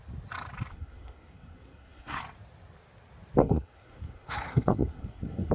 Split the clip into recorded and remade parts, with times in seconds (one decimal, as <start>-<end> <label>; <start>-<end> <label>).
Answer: 0.0-0.7 recorded; 0.7-2.2 remade; 2.2-3.4 recorded; 3.4-5.5 remade